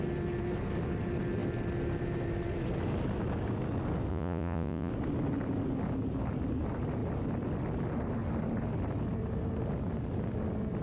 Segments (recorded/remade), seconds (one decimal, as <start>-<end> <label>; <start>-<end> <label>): 0.0-4.1 recorded; 4.1-4.9 remade; 4.9-10.8 recorded